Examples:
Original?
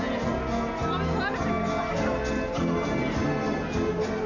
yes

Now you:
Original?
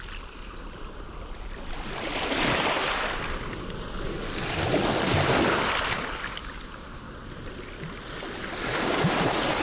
yes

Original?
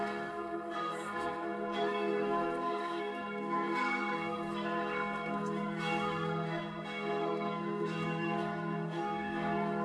no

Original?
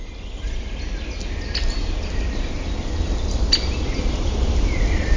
yes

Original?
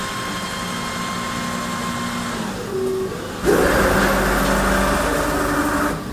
yes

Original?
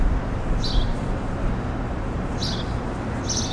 yes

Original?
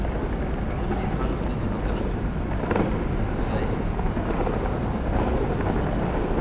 yes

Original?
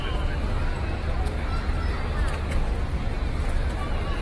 yes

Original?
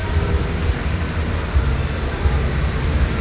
yes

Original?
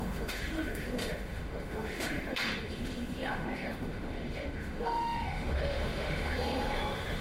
no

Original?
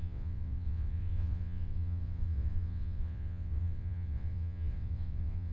no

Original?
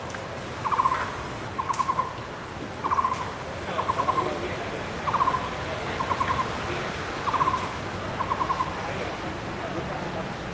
yes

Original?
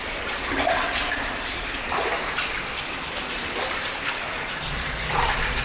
no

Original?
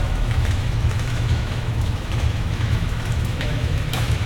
no